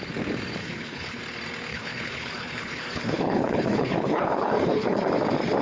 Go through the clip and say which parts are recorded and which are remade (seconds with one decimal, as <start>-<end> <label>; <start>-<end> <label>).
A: 0.0-0.6 recorded; 0.6-1.2 remade; 1.2-1.7 recorded; 1.7-5.1 remade; 5.1-5.6 recorded